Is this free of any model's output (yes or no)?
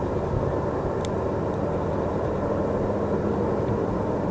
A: yes